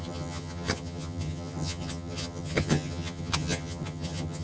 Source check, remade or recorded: remade